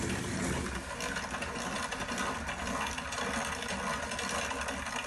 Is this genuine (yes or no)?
yes